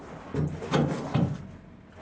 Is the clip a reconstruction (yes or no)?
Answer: no